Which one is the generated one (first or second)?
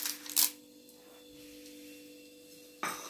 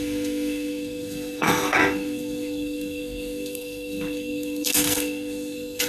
second